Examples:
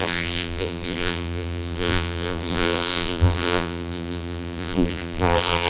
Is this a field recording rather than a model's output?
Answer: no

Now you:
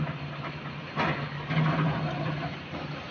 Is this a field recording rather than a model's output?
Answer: yes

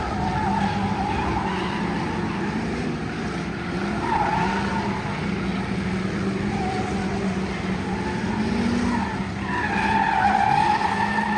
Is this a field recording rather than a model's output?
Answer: yes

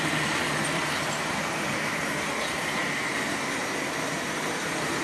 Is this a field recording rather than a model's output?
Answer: no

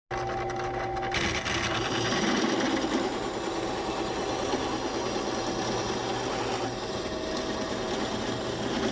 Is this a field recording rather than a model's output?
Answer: yes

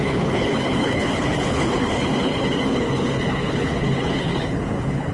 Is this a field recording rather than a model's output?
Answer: no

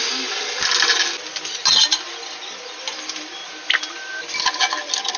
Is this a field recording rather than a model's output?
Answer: yes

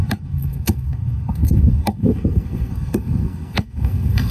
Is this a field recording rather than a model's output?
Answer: no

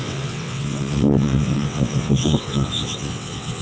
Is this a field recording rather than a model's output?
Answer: no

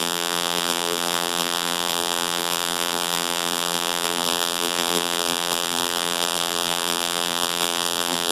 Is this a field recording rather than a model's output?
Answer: no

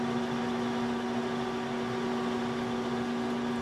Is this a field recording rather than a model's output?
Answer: yes